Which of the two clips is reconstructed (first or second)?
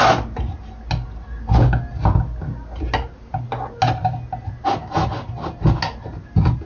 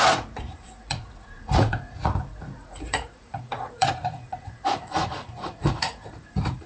second